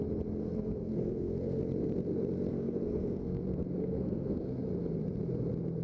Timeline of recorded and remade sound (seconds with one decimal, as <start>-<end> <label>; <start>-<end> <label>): 0.0-0.4 recorded; 0.4-1.6 remade; 1.6-2.5 recorded; 2.5-3.4 remade; 3.4-3.8 recorded; 3.8-4.6 remade; 4.6-5.8 recorded